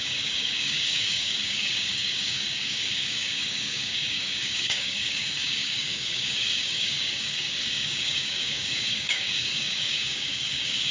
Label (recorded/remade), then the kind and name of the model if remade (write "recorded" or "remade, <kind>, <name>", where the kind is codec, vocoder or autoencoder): remade, codec, DAC